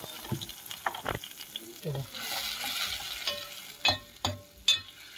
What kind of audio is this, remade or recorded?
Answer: recorded